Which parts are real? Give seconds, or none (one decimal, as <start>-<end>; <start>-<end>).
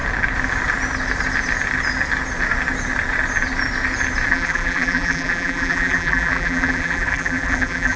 0.0-4.3